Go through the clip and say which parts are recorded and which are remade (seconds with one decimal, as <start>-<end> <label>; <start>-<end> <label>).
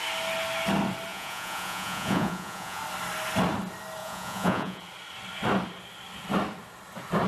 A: 0.0-1.1 recorded; 1.1-2.8 remade; 2.8-4.0 recorded; 4.0-4.8 remade; 4.8-7.3 recorded